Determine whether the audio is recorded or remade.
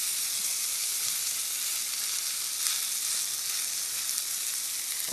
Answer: recorded